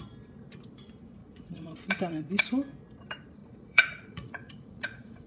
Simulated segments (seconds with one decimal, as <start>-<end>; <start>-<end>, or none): 1.2-2.4; 3.4-5.3